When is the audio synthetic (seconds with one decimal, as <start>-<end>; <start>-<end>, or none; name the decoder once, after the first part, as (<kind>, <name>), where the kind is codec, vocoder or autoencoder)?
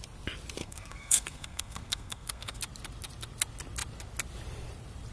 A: 0.6-2.6 (codec, SNAC)